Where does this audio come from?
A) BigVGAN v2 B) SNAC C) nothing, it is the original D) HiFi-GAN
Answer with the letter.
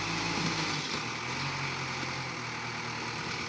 C